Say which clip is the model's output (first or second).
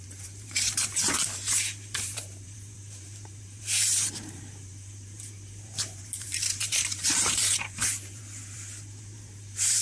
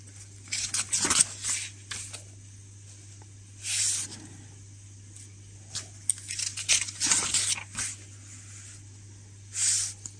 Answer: first